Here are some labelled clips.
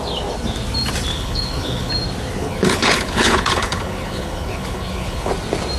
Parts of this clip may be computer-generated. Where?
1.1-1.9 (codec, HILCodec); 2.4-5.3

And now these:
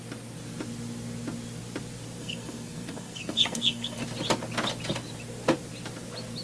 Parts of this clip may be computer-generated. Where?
2.2-4.0 (codec, SNAC)

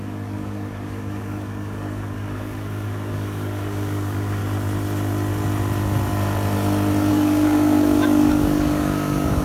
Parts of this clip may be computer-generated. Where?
0.0-4.4 (codec, DAC); 7.1-9.4